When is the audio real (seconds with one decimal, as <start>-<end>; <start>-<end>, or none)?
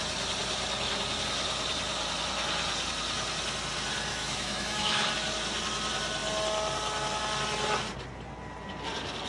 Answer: 0.0-4.1; 5.1-9.3